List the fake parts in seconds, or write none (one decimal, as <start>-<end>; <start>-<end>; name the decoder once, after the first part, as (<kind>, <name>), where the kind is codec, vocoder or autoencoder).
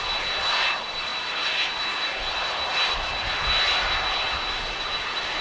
none